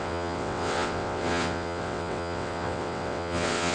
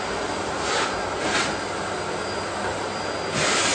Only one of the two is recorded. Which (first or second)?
second